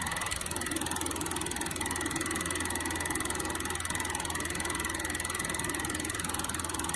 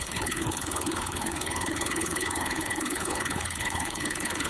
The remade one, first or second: second